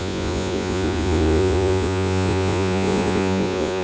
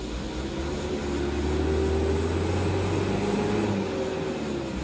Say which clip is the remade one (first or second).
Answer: first